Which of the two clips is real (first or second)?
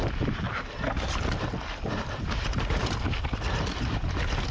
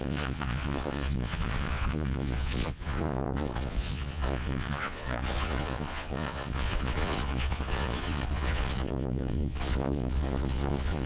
first